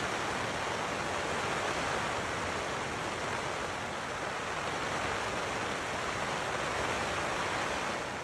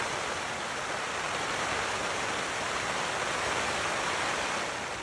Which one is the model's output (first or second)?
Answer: second